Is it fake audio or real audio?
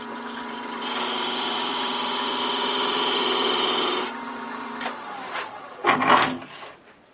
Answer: fake